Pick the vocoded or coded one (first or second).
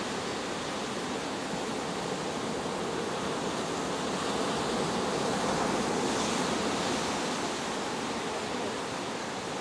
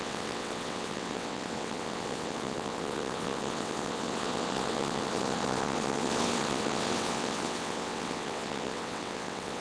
second